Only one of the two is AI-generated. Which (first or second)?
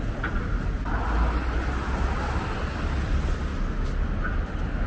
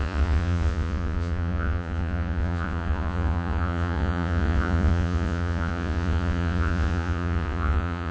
second